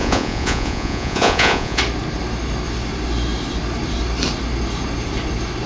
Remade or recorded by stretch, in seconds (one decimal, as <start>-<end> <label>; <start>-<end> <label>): 0.0-1.8 remade; 1.8-5.7 recorded